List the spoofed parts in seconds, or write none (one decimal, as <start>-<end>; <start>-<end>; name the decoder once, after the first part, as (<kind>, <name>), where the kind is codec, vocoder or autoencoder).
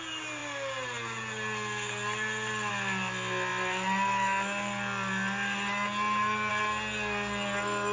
none